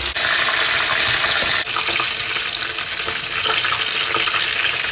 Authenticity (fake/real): real